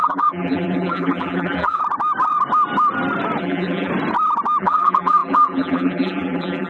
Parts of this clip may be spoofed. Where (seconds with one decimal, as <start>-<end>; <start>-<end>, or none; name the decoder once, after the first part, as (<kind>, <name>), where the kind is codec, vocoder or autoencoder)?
0.0-1.8 (vocoder, BigVGAN v2); 3.4-3.9; 4.6-6.7